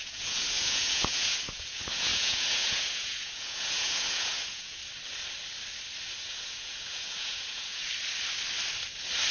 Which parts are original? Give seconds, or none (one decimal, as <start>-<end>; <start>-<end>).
4.8-6.1; 7.8-9.3